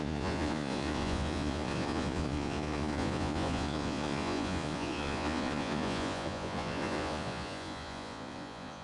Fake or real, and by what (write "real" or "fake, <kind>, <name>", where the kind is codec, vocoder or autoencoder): fake, vocoder, Vocos